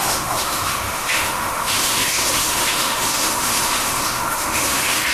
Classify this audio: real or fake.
fake